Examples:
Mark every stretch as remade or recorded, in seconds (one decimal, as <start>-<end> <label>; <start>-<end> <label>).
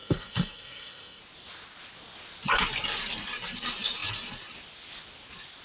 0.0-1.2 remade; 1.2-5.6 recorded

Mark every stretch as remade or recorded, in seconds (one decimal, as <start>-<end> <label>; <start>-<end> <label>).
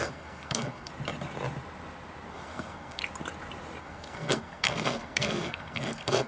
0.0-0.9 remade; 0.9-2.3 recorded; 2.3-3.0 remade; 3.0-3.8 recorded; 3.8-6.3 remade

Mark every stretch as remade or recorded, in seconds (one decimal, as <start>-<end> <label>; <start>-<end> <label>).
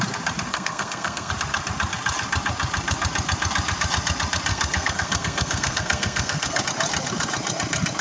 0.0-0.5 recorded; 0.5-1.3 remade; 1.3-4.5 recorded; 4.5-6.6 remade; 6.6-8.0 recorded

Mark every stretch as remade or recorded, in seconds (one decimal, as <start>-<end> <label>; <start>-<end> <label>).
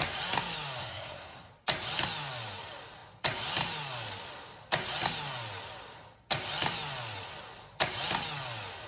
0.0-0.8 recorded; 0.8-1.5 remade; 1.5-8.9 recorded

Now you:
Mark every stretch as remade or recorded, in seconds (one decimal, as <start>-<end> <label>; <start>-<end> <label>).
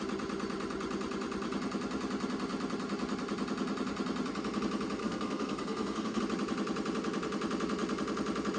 0.0-5.0 recorded; 5.0-6.2 remade; 6.2-8.6 recorded